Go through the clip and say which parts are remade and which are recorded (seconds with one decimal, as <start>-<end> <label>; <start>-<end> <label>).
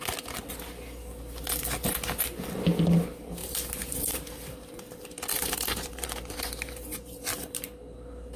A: 0.0-3.4 recorded; 3.4-4.7 remade; 4.7-5.3 recorded; 5.3-7.2 remade; 7.2-8.4 recorded